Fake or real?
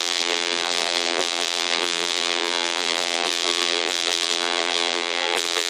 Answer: fake